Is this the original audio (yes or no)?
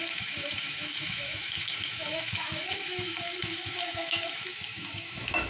no